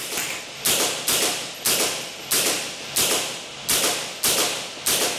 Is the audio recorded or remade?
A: recorded